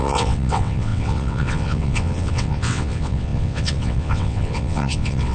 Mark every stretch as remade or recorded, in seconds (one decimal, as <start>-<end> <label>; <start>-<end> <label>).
0.0-5.3 remade